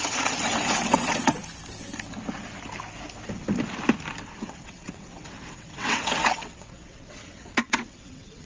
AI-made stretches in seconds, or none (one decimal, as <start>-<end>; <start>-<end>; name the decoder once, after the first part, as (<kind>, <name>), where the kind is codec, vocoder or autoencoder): 0.0-1.4 (vocoder, WaveNeXt); 4.2-8.5